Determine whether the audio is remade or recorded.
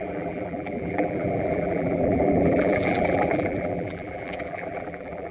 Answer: remade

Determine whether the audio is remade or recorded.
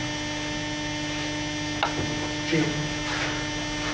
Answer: recorded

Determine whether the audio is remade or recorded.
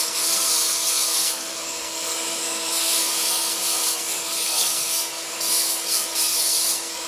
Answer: remade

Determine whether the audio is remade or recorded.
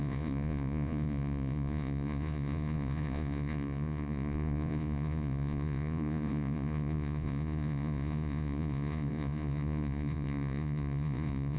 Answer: remade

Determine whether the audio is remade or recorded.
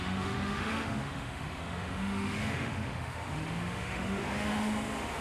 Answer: remade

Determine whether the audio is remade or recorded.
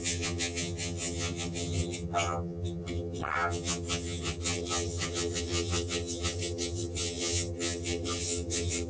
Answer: remade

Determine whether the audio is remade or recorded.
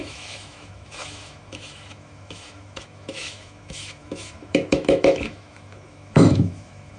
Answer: remade